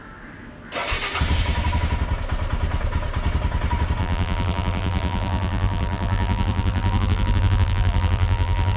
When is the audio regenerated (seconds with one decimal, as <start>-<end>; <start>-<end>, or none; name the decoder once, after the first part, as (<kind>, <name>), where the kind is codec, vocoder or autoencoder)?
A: 4.0-8.8 (vocoder, BigVGAN v2)